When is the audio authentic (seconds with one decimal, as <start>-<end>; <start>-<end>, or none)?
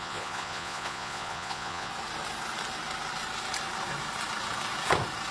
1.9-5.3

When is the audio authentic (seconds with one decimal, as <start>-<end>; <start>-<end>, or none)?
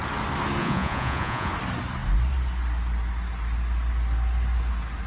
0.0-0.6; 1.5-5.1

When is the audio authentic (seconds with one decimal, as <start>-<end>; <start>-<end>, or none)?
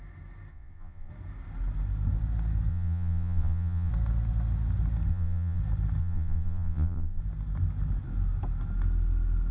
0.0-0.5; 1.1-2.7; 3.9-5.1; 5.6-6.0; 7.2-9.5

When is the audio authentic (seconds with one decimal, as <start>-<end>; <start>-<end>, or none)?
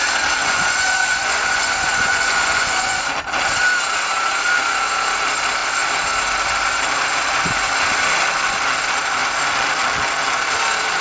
0.0-0.4; 3.1-11.0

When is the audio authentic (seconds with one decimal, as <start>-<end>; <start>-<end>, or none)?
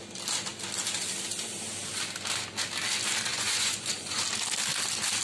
0.0-3.3; 4.2-5.2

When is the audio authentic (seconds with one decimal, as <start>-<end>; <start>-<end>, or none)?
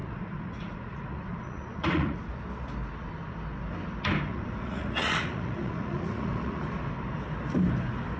2.3-4.3; 6.6-8.2